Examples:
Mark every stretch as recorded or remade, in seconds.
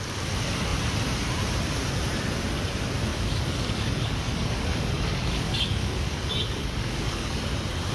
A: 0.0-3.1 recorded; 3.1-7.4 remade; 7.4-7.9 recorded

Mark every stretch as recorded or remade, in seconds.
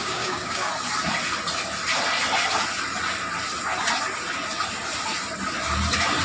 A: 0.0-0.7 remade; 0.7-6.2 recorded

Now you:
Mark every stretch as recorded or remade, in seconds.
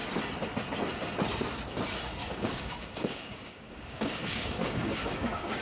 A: 0.0-2.2 recorded; 2.2-5.6 remade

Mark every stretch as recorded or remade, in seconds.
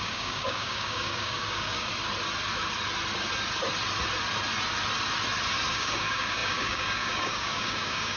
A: 0.0-1.9 remade; 1.9-5.7 recorded; 5.7-8.2 remade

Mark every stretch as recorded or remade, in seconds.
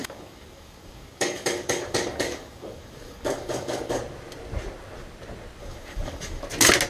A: 0.0-4.0 remade; 4.0-5.6 recorded; 5.6-6.4 remade; 6.4-6.9 recorded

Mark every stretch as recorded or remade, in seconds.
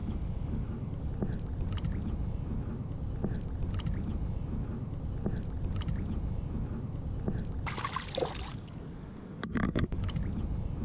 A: 0.0-1.1 remade; 1.1-8.5 recorded; 8.5-10.2 remade; 10.2-10.8 recorded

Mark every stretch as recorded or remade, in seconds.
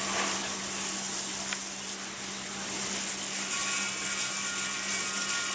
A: 0.0-5.5 recorded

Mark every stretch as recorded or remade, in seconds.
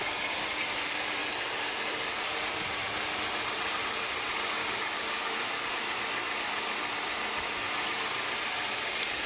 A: 0.0-4.6 recorded; 4.6-5.7 remade; 5.7-9.3 recorded